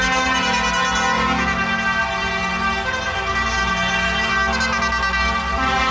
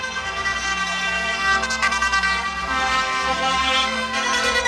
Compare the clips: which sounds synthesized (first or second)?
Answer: second